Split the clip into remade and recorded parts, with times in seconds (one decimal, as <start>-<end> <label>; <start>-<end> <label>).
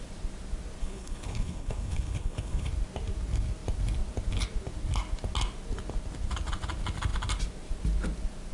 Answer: 0.0-0.8 recorded; 0.8-2.7 remade; 2.7-8.5 recorded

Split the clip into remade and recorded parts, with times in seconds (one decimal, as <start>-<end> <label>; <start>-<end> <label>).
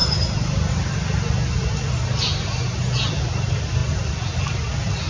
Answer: 0.0-5.1 recorded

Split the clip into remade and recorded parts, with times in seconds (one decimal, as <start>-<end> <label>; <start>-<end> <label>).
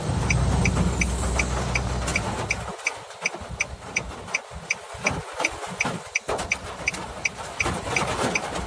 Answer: 0.0-8.7 recorded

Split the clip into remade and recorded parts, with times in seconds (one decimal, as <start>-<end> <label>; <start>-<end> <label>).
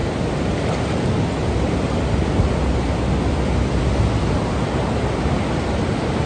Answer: 0.0-6.3 recorded